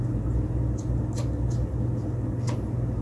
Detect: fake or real real